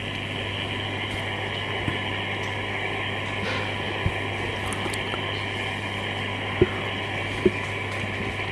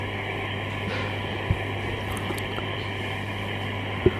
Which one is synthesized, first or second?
second